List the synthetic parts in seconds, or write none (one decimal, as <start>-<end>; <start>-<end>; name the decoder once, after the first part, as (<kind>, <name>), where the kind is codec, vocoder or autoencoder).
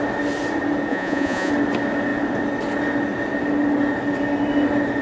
0.9-1.5 (vocoder, Vocos)